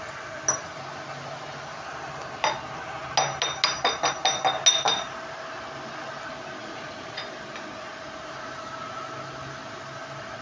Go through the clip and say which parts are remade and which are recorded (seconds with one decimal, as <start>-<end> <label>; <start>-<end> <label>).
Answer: 0.0-6.6 recorded; 6.6-7.2 remade; 7.2-10.4 recorded